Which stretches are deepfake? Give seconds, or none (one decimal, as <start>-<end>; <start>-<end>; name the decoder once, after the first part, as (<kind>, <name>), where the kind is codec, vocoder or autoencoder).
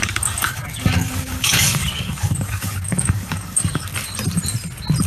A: 0.0-3.9 (codec, DAC)